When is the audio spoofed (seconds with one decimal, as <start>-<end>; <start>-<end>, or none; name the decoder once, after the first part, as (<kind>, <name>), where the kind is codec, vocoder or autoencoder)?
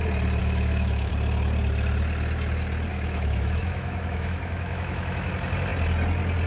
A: 0.4-1.1 (autoencoder, DAC-VAE); 2.9-5.3